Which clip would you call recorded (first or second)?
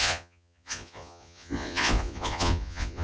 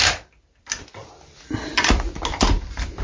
second